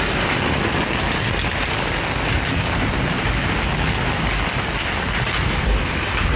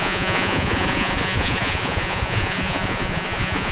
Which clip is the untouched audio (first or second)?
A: first